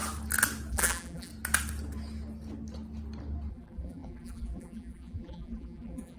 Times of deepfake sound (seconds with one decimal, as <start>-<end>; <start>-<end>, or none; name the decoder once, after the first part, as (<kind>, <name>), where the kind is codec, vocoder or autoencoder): 0.7-1.3 (vocoder, BigVGAN v2); 3.5-6.2